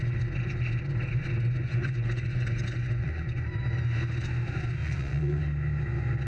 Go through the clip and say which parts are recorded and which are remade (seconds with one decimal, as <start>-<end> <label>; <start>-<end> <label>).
0.0-1.6 recorded; 1.6-3.5 remade; 3.5-4.8 recorded; 4.8-5.4 remade; 5.4-6.3 recorded

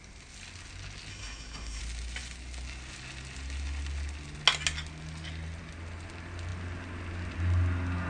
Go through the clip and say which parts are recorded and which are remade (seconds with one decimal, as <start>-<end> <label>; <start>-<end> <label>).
0.0-1.1 recorded; 1.1-1.8 remade; 1.8-8.1 recorded

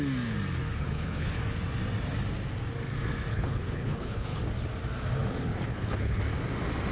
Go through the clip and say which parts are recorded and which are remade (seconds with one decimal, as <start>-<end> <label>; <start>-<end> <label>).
0.0-0.7 recorded; 0.7-1.4 remade; 1.4-3.3 recorded; 3.3-4.4 remade; 4.4-5.7 recorded; 5.7-6.2 remade; 6.2-6.9 recorded

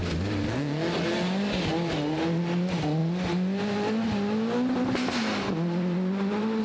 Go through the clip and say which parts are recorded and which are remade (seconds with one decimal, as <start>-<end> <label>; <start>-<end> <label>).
0.0-6.6 recorded

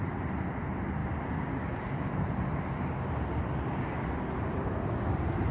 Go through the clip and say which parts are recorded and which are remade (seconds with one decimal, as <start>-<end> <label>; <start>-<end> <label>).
0.0-5.5 recorded

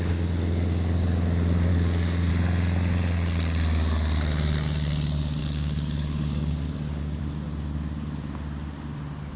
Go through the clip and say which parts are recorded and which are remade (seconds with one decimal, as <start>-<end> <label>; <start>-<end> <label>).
0.0-1.7 recorded; 1.7-2.3 remade; 2.3-5.4 recorded; 5.4-7.2 remade; 7.2-9.4 recorded

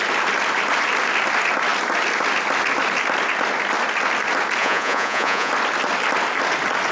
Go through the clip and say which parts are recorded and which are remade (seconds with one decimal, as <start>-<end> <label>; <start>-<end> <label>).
0.0-4.6 recorded; 4.6-5.5 remade; 5.5-6.9 recorded